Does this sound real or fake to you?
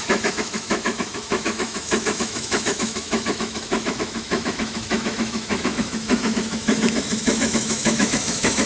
fake